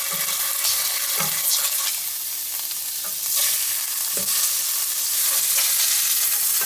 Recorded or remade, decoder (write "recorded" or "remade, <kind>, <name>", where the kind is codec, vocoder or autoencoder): recorded